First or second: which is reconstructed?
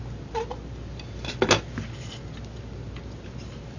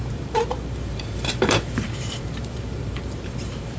second